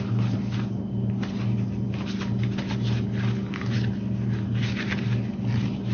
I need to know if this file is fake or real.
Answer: real